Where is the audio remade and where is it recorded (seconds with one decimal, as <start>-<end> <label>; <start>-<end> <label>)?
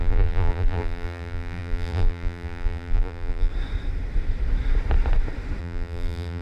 0.0-3.5 remade; 3.5-5.6 recorded; 5.6-6.4 remade